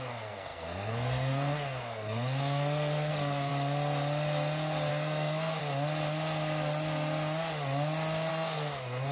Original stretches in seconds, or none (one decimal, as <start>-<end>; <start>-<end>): 3.5-4.9; 5.6-8.3